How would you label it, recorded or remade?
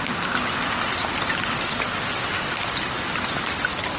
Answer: recorded